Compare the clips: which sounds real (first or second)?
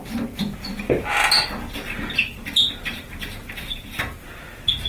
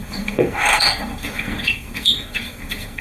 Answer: first